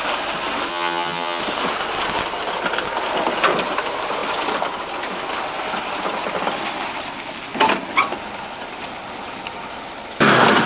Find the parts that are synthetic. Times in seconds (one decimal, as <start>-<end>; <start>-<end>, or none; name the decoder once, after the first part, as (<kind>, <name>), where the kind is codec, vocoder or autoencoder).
0.7-1.4 (vocoder, HiFi-GAN)